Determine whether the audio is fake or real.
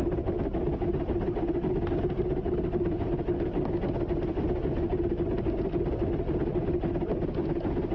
real